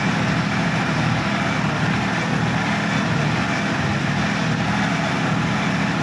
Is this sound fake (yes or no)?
yes